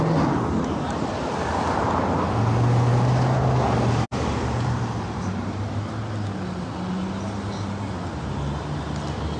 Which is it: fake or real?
real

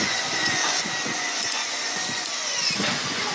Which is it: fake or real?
fake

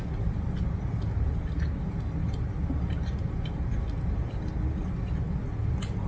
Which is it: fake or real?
real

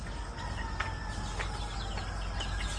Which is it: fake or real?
real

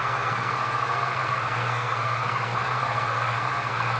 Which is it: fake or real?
fake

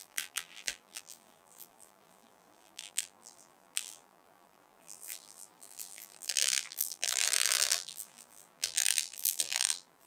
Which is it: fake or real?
fake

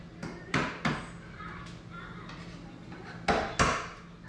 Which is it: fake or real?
real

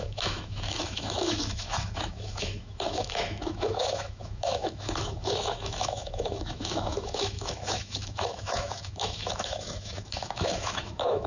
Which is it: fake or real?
fake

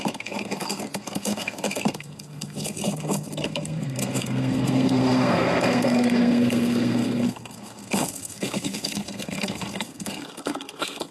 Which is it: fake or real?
fake